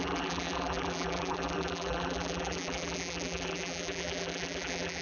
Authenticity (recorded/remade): remade